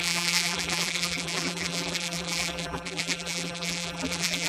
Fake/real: fake